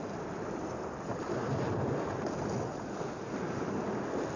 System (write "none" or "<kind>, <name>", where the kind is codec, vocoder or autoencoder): none